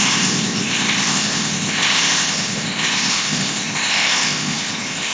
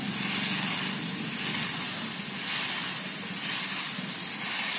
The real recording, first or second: second